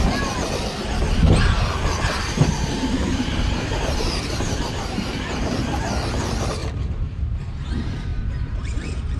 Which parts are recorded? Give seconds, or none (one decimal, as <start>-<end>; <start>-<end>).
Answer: 0.0-2.1; 5.8-6.6; 7.4-8.1